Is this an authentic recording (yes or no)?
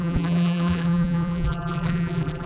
no